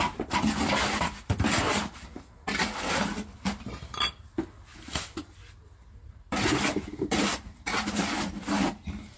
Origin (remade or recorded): recorded